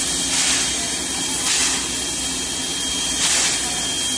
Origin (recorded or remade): recorded